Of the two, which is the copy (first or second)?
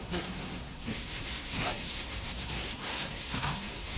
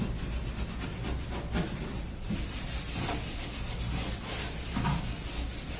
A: first